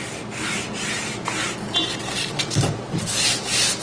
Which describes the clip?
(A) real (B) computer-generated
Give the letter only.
A